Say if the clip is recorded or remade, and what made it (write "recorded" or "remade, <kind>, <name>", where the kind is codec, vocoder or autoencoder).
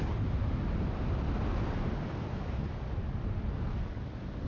recorded